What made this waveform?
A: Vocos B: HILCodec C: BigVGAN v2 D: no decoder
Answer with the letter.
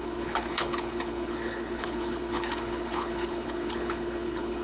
B